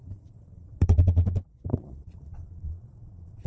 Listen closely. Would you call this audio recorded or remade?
remade